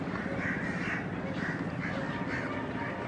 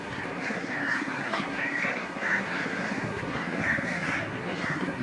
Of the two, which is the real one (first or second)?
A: first